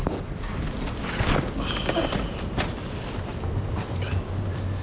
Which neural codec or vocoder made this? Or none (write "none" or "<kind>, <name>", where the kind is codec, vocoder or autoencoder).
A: vocoder, BigVGAN v2